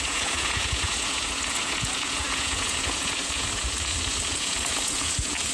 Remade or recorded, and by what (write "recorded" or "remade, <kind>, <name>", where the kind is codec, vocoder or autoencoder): remade, vocoder, Vocos